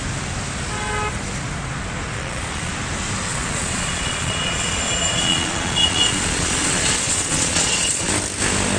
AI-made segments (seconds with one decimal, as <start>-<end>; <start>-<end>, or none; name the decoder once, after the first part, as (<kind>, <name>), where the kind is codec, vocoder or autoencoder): 2.1-2.7 (vocoder, Vocos); 3.3-8.1